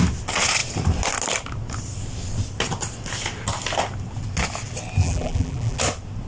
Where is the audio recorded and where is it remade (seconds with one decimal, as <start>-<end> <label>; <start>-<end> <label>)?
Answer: 0.0-5.0 recorded; 5.0-5.8 remade; 5.8-6.3 recorded

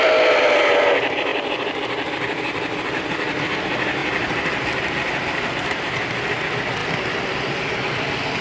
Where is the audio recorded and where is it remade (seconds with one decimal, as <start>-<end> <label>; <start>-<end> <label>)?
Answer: 0.0-1.3 recorded; 1.3-3.6 remade; 3.6-4.0 recorded; 4.0-5.7 remade; 5.7-8.4 recorded

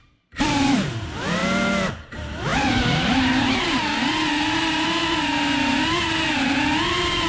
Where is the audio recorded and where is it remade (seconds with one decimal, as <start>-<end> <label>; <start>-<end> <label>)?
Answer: 0.0-1.4 remade; 1.4-1.9 recorded; 1.9-7.3 remade

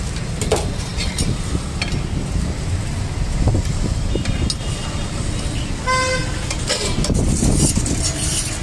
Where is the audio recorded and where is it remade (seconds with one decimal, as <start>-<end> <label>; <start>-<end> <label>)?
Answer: 0.0-8.6 recorded